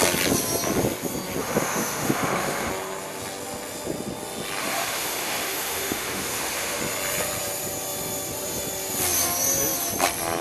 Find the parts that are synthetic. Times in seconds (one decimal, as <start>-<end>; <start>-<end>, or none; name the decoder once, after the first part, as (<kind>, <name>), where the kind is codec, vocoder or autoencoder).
1.4-2.7 (autoencoder, DAC-VAE); 4.6-6.8